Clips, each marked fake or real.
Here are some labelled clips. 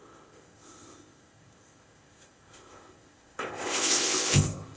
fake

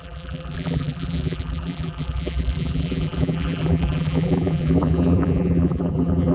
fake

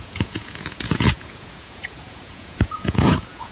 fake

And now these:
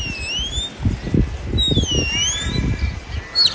real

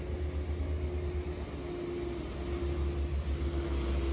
real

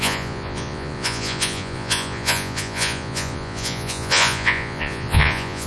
fake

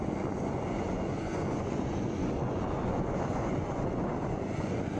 fake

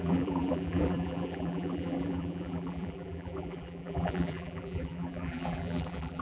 fake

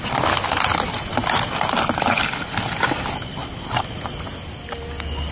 real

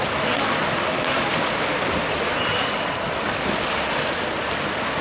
real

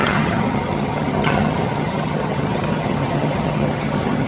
fake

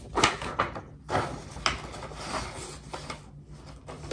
real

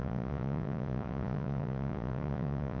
fake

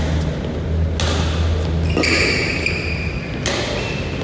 real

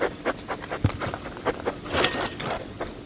real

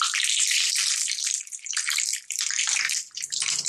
fake